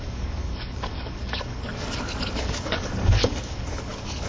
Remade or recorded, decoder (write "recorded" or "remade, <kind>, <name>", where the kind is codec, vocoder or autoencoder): remade, codec, DAC